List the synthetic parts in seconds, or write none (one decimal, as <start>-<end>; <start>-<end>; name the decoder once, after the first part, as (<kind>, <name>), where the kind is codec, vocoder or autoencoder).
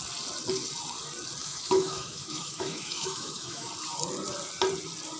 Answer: 1.4-3.7 (autoencoder, DAC-VAE)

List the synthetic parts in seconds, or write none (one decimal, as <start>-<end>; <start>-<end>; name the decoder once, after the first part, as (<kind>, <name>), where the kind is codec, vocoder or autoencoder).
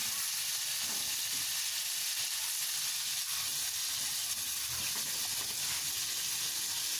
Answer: none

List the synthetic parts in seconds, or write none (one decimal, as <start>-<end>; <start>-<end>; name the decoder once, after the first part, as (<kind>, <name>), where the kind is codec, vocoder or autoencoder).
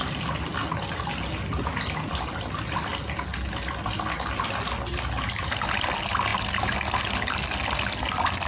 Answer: none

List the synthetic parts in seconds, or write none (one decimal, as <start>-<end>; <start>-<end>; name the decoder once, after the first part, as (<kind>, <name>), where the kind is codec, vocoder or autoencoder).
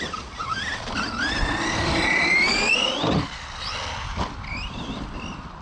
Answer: none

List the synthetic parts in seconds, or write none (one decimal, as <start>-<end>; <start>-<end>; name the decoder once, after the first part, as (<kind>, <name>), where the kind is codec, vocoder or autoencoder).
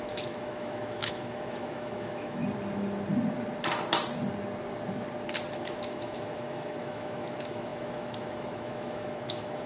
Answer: 0.0-2.4 (autoencoder, DAC-VAE); 5.5-9.7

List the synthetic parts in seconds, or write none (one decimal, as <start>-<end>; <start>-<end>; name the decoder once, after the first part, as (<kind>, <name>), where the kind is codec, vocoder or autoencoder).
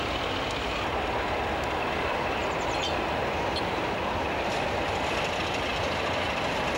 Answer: none